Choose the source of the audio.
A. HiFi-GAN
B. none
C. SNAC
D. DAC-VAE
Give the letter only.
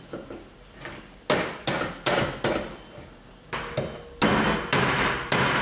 B